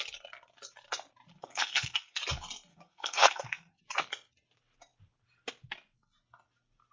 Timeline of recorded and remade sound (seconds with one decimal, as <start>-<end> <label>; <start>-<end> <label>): 0.0-1.4 recorded; 1.4-2.2 remade; 2.2-2.7 recorded; 2.7-3.8 remade; 3.8-6.9 recorded